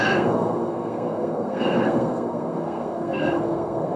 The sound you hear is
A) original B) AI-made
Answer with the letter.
B